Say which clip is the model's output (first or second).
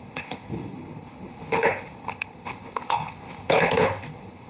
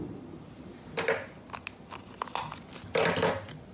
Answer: first